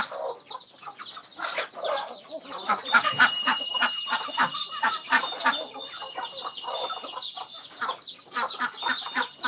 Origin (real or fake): real